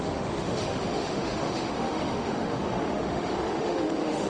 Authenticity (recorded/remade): remade